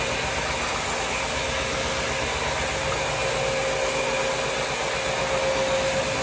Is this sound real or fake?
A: real